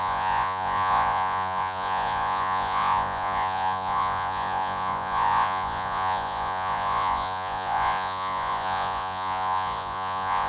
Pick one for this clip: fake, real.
fake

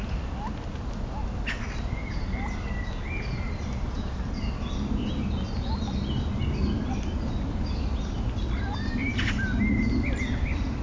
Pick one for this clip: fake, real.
real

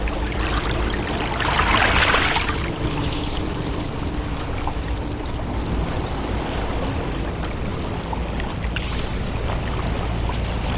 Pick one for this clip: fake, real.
real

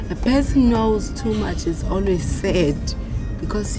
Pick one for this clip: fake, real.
real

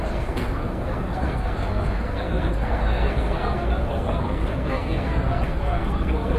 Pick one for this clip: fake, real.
fake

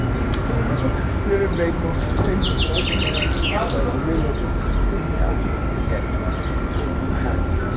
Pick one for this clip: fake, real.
real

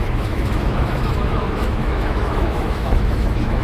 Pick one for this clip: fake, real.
fake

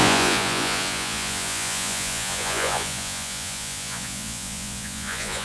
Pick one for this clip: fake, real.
fake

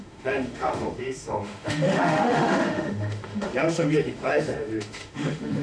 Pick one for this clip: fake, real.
fake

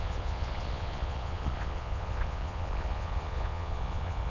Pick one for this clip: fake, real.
fake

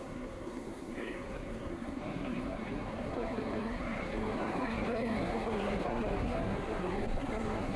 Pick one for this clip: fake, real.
fake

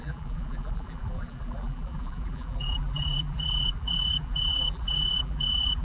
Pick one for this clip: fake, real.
fake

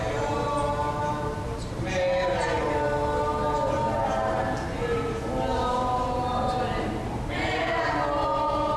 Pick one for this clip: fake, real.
real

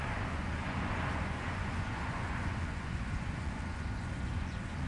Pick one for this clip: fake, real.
fake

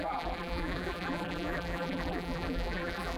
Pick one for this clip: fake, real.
fake